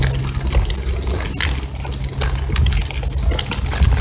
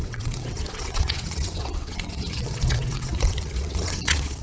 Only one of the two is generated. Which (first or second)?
second